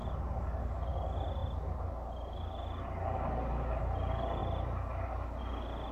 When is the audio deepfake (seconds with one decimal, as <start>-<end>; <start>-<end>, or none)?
none